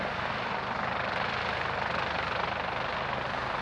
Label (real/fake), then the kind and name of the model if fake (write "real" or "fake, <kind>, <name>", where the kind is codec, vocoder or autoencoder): real